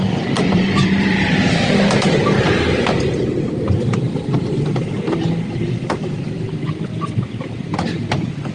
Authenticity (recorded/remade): remade